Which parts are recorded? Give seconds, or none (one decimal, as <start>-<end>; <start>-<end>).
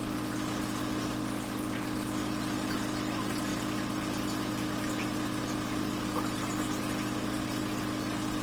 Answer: 0.0-8.4